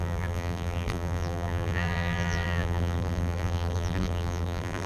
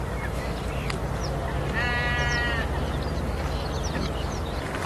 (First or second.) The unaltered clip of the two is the second